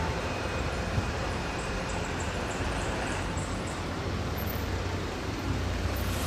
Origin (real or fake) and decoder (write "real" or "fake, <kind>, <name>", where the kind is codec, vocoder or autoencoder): fake, vocoder, BigVGAN v2